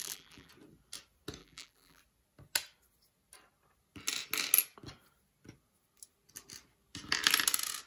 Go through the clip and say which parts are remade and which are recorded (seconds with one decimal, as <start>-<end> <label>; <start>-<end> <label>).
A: 0.0-0.5 remade; 0.5-1.4 recorded; 1.4-2.0 remade; 2.0-7.9 recorded